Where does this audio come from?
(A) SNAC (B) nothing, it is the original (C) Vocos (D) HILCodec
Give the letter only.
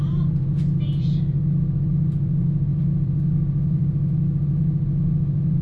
C